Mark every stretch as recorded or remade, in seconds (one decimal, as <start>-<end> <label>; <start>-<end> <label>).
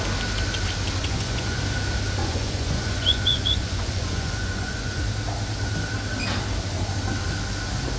0.0-1.0 recorded; 1.0-1.6 remade; 1.6-2.2 recorded; 2.2-5.0 remade; 5.0-8.0 recorded